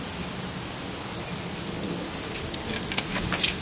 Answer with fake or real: real